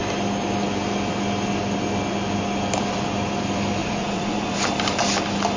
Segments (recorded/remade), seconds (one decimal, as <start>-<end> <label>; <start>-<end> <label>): 0.0-3.8 recorded; 3.8-4.5 remade; 4.5-5.6 recorded